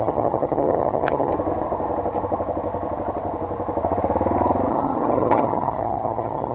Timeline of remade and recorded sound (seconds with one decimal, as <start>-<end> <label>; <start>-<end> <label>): 0.0-1.3 remade; 1.3-4.7 recorded; 4.7-6.5 remade